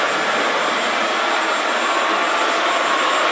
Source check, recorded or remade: recorded